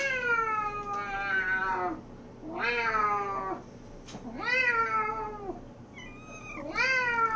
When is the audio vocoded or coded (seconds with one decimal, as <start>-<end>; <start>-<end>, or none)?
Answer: none